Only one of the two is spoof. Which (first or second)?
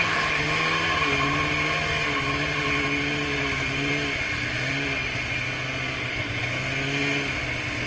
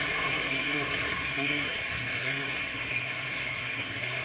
second